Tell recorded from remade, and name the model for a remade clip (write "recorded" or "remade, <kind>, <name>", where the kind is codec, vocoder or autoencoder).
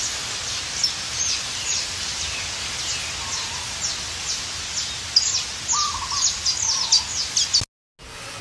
recorded